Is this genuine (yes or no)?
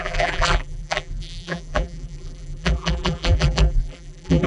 no